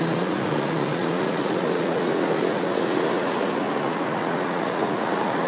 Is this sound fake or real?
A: fake